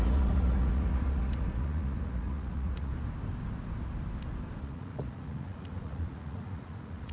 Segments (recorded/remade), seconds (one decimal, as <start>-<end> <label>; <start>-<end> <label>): 0.0-2.9 remade; 2.9-4.6 recorded; 4.6-7.1 remade